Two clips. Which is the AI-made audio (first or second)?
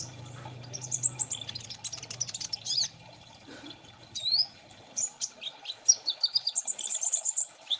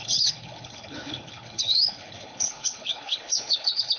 second